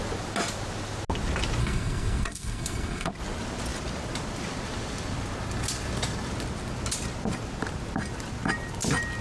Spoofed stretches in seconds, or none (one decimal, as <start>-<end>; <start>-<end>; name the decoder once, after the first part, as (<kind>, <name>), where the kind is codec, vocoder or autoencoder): 1.6-3.1 (codec, SNAC)